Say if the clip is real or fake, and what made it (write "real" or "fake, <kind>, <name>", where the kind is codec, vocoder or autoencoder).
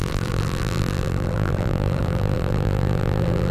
fake, vocoder, BigVGAN v2